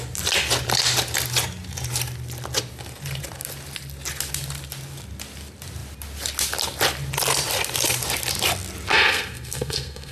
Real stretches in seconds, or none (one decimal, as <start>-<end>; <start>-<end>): 0.0-8.9